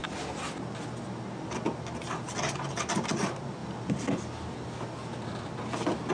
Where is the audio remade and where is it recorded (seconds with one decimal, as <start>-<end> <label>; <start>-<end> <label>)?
0.0-6.1 recorded